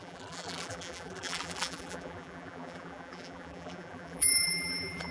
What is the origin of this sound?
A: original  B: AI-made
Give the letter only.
B